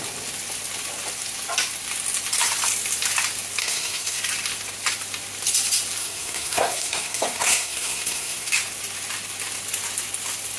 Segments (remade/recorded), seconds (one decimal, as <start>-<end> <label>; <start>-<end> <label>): 0.0-3.6 recorded; 3.6-4.2 remade; 4.2-6.0 recorded; 6.0-8.5 remade; 8.5-10.6 recorded